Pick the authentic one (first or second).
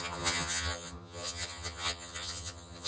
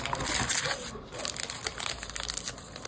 second